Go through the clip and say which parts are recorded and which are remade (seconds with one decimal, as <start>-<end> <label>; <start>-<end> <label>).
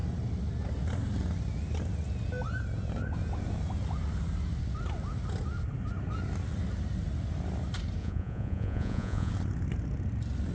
0.0-8.0 recorded; 8.0-9.3 remade; 9.3-10.5 recorded